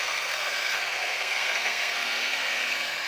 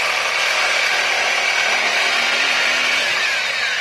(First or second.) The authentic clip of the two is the second